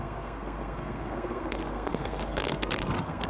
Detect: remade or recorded remade